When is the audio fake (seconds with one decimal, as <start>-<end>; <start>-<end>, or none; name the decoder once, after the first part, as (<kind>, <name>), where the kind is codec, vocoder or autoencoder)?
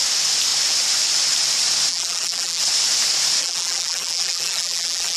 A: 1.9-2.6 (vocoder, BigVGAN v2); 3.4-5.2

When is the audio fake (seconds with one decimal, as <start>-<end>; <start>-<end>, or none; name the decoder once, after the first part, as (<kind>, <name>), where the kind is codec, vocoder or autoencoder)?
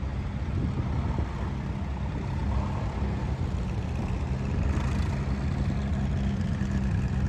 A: none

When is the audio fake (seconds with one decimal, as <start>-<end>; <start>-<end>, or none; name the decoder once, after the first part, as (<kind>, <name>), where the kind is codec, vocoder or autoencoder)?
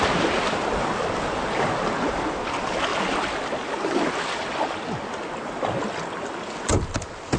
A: none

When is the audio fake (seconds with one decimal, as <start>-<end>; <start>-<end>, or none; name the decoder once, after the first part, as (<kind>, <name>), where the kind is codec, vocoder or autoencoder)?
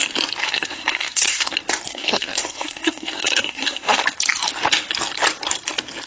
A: 0.4-1.5 (codec, SNAC); 1.9-4.0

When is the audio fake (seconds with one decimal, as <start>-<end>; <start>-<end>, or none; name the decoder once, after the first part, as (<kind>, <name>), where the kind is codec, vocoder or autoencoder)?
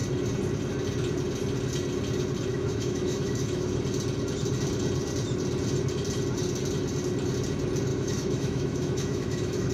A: 2.5-3.8 (autoencoder, DAC-VAE); 7.9-9.7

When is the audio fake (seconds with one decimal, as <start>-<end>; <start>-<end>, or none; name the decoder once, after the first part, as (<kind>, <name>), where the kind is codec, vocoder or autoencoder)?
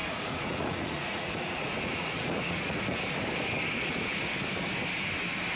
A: 0.0-3.0 (vocoder, Vocos); 3.7-4.2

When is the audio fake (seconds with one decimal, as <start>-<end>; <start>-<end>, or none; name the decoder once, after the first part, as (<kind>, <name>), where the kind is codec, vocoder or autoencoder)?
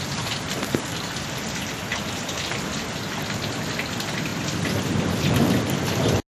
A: none